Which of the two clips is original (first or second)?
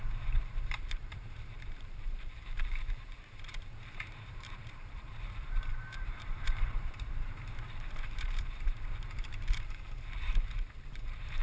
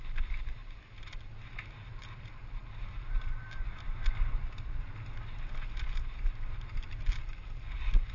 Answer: second